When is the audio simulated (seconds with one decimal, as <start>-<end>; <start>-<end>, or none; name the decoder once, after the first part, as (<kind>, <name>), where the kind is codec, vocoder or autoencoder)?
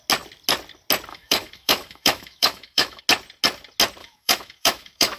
1.1-3.0 (autoencoder, DAC-VAE); 4.0-5.2